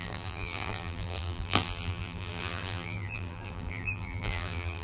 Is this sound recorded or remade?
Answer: remade